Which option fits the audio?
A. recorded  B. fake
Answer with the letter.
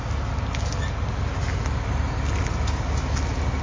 A